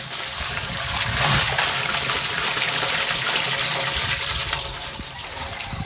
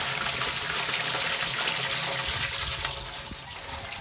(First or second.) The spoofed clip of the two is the first